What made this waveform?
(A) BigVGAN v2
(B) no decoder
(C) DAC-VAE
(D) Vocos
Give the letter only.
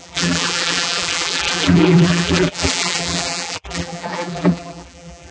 A